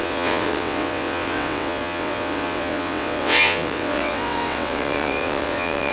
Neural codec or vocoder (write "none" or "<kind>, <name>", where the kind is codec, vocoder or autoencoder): vocoder, WaveNeXt